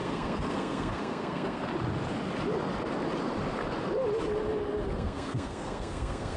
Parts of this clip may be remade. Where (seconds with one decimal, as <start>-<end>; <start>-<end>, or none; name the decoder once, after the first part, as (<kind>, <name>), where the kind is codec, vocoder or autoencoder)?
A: 0.0-1.7 (codec, SNAC); 4.9-6.4